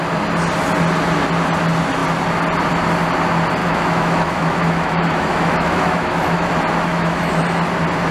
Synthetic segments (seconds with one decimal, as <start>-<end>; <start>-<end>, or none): 3.6-6.5; 6.9-7.4